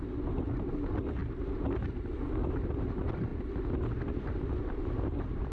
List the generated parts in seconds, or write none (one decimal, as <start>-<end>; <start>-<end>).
none